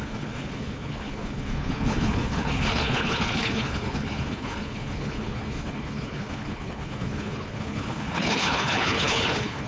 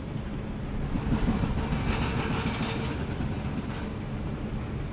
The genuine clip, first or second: second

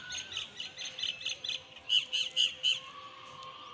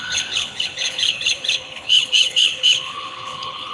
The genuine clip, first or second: first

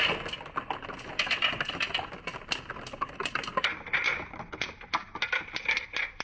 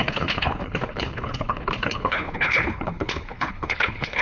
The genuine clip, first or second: first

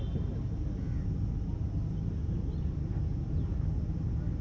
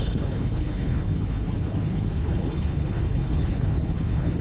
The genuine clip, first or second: first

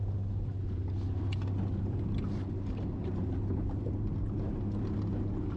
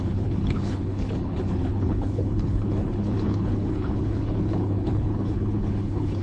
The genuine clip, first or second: first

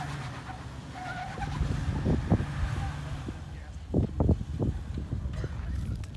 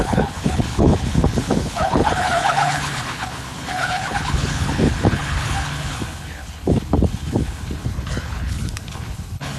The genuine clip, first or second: first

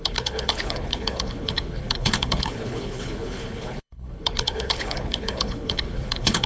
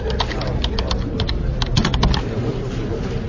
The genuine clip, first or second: second